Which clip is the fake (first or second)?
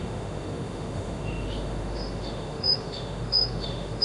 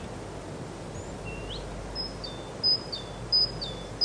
first